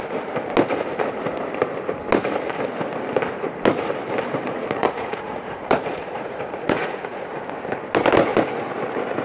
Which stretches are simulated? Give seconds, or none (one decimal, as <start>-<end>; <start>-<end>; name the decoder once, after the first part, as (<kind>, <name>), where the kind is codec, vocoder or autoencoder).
4.5-7.3 (vocoder, Vocos)

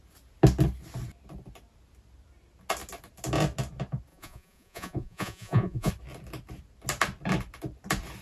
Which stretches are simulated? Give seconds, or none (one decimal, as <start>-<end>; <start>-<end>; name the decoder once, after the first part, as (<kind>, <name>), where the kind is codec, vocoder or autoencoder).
4.1-5.9 (vocoder, Vocos)

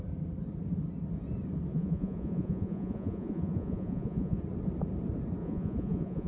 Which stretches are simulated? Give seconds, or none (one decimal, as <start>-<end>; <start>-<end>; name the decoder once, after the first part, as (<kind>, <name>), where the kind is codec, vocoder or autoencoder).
1.7-4.4 (vocoder, Vocos); 5.4-6.3

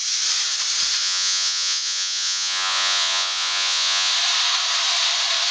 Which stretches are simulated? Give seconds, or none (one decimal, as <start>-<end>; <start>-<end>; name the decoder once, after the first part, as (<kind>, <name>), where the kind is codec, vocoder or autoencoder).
1.0-4.1 (vocoder, Vocos)